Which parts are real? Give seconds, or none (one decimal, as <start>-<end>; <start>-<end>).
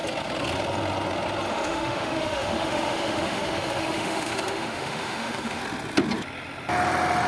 0.0-1.5; 5.6-7.3